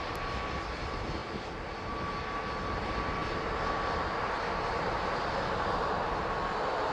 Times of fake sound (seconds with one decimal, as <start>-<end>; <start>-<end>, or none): none